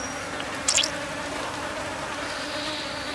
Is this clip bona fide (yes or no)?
yes